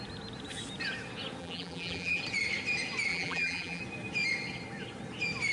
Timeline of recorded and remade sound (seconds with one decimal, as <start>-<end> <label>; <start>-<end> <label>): 0.0-1.4 recorded; 1.4-2.2 remade; 2.2-3.1 recorded; 3.1-3.8 remade; 3.8-5.5 recorded